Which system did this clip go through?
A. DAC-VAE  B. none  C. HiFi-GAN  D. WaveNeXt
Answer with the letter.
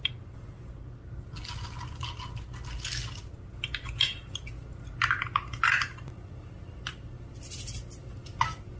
B